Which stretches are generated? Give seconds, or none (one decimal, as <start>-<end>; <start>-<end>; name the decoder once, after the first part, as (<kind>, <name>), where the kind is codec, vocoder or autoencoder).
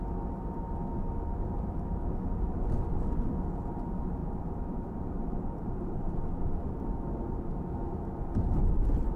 4.2-6.6 (vocoder, BigVGAN v2)